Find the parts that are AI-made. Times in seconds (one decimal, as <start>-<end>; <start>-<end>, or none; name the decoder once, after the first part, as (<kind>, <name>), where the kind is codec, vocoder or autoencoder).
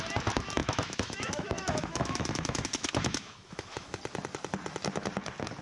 0.6-4.0 (autoencoder, DAC-VAE)